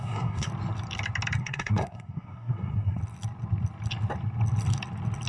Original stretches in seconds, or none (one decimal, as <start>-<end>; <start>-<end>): 0.5-1.4; 3.0-5.3